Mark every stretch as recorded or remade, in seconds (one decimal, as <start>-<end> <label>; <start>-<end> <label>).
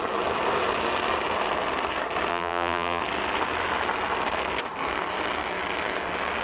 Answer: 0.0-2.3 recorded; 2.3-3.0 remade; 3.0-6.4 recorded